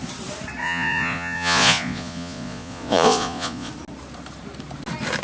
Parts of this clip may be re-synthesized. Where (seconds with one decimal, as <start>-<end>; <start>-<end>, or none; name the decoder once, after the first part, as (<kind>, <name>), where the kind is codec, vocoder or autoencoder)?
0.6-3.7 (vocoder, Vocos)